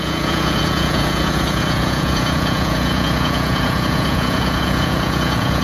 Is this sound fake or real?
fake